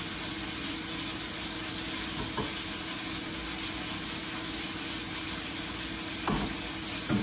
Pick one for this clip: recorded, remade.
recorded